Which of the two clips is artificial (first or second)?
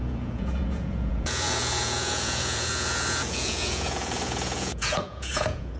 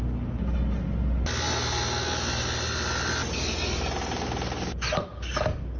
first